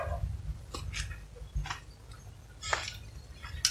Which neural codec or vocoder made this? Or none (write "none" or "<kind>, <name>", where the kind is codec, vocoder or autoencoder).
none